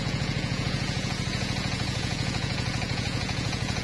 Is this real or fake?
fake